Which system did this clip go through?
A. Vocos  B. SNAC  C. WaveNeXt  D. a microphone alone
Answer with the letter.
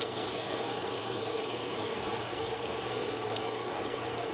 B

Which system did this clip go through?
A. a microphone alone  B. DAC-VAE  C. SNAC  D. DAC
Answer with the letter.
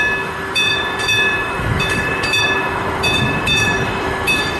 B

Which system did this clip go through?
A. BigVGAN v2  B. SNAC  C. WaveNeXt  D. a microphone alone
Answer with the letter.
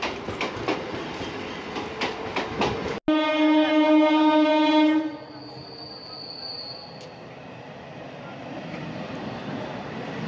D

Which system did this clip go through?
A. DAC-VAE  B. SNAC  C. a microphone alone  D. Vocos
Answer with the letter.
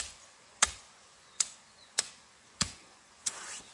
D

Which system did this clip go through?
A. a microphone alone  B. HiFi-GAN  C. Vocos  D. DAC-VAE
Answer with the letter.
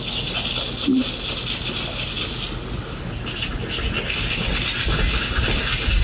A